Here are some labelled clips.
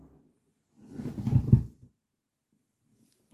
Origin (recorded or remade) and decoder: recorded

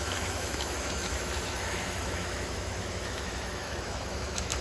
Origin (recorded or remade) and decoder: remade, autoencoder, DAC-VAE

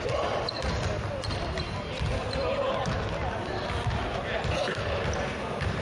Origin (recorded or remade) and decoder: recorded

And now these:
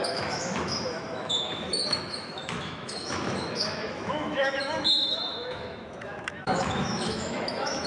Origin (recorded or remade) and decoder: remade, autoencoder, DAC-VAE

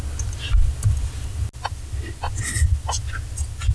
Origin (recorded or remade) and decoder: recorded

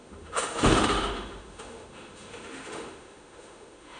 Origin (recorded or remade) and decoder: remade, autoencoder, DAC-VAE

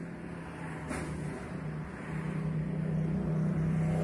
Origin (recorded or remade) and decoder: recorded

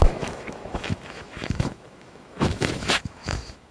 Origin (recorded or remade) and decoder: remade, autoencoder, DAC-VAE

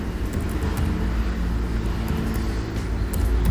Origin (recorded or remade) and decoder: recorded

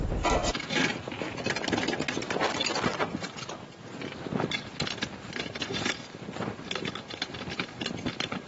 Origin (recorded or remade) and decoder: recorded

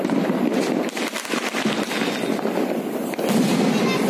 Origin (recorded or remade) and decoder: recorded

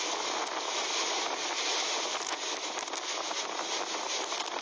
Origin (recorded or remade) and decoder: recorded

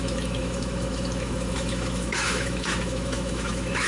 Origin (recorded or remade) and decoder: remade, autoencoder, DAC-VAE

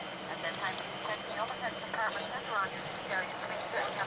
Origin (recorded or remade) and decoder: recorded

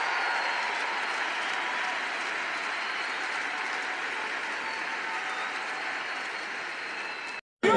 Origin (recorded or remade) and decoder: recorded